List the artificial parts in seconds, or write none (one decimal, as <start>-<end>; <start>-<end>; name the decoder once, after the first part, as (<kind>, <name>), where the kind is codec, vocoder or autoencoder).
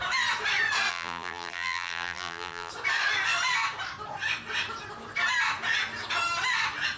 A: 0.9-2.7 (vocoder, BigVGAN v2)